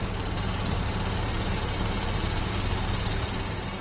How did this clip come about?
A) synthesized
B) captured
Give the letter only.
A